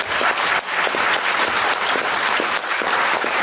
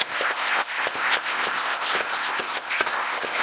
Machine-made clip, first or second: second